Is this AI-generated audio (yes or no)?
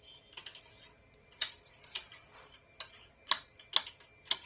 no